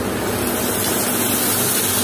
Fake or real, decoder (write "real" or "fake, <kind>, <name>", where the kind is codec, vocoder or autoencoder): real